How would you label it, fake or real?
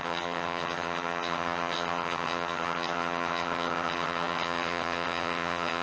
fake